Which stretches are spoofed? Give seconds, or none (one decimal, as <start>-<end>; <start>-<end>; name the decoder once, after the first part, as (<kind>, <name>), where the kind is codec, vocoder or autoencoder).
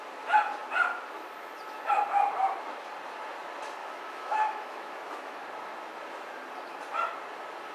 3.8-5.4 (autoencoder, DAC-VAE)